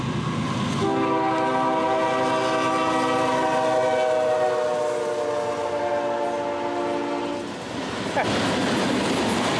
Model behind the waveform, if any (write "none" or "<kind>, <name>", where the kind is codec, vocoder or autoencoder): none